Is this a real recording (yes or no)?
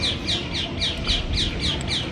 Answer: yes